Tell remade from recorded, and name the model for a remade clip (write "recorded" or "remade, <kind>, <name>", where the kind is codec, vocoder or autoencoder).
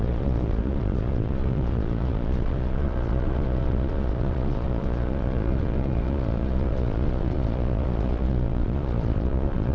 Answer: remade, vocoder, Vocos